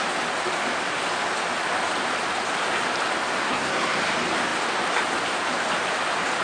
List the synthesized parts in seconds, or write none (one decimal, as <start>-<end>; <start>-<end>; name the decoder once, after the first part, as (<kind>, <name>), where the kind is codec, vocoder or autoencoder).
3.4-4.0 (codec, SNAC)